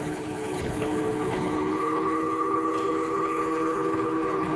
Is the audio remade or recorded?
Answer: remade